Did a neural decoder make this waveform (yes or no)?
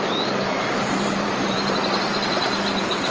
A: yes